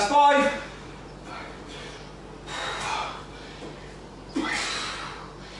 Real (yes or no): yes